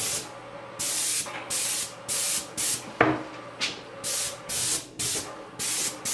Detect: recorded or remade recorded